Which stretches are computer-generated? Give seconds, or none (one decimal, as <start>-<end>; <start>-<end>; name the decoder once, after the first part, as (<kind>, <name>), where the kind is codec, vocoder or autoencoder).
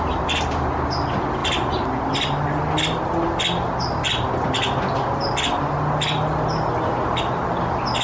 none